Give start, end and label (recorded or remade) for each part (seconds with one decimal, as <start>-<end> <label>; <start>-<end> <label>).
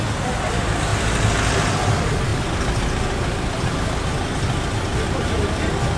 0.0-6.0 recorded